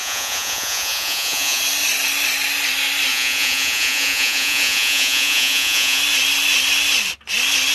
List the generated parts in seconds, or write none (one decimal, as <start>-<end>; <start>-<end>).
0.0-1.6; 3.1-6.0